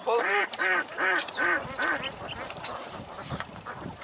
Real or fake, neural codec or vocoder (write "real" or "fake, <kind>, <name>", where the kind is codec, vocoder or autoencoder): fake, vocoder, BigVGAN v2